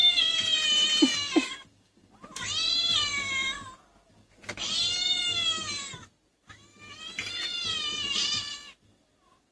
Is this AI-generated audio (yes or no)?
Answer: no